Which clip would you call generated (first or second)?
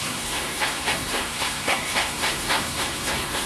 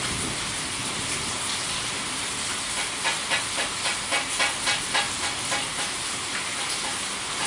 first